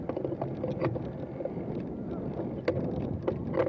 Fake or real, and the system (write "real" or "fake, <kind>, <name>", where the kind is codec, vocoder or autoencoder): real